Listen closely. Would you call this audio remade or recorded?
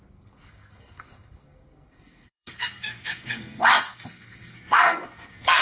remade